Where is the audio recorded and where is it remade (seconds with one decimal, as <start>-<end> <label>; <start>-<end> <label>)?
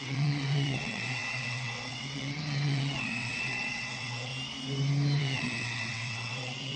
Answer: 0.0-4.3 remade; 4.3-5.2 recorded; 5.2-6.8 remade